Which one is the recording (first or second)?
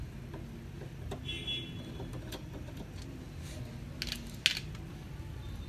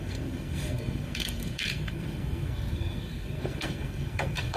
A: first